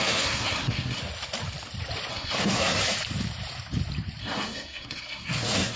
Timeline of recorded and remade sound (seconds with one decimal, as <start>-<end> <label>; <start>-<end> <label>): 0.0-1.0 remade; 1.0-2.1 recorded; 2.1-2.8 remade; 2.8-4.2 recorded; 4.2-5.8 remade